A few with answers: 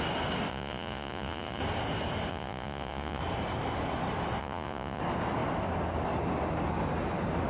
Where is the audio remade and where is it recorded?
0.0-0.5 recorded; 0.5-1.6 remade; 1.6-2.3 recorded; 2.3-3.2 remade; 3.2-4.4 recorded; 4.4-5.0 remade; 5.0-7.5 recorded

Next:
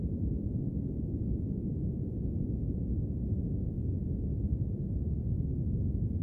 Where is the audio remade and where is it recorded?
0.0-1.2 recorded; 1.2-4.9 remade; 4.9-6.2 recorded

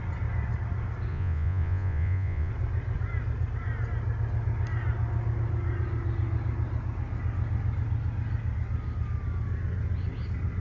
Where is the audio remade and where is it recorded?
0.0-1.1 recorded; 1.1-2.5 remade; 2.5-10.6 recorded

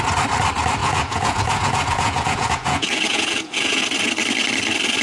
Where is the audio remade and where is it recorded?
0.0-0.8 recorded; 0.8-3.8 remade; 3.8-5.0 recorded

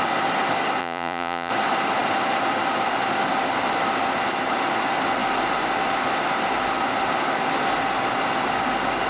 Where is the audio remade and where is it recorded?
0.0-0.8 recorded; 0.8-1.5 remade; 1.5-9.1 recorded

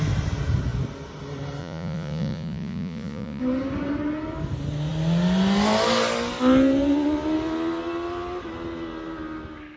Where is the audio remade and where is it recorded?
0.0-1.6 recorded; 1.6-3.4 remade; 3.4-9.8 recorded